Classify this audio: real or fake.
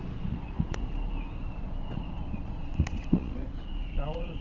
fake